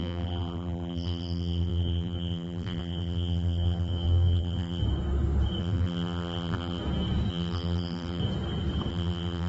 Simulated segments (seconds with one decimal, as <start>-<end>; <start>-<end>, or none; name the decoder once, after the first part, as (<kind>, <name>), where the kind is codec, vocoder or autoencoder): 0.0-4.8 (vocoder, BigVGAN v2); 5.6-6.8; 7.3-8.2; 8.9-9.5